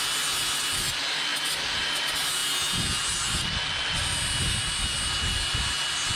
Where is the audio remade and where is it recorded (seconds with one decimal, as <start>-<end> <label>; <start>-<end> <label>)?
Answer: 0.0-6.2 recorded